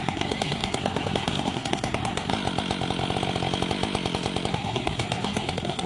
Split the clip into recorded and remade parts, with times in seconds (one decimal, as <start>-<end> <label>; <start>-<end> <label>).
0.0-2.3 remade; 2.3-4.5 recorded; 4.5-5.9 remade